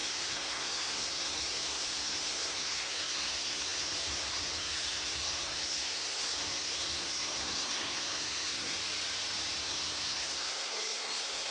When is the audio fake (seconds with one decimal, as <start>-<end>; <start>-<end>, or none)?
0.0-8.8; 9.6-11.5